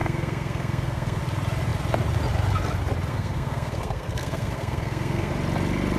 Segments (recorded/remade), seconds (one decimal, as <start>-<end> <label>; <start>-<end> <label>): 0.0-1.2 remade; 1.2-3.1 recorded; 3.1-5.3 remade; 5.3-6.0 recorded